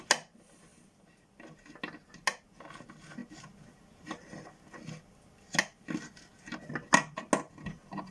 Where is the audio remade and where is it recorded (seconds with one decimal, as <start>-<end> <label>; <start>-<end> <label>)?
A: 0.0-8.1 recorded